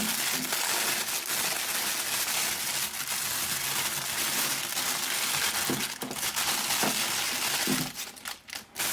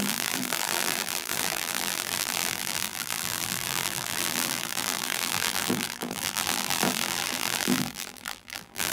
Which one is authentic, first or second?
first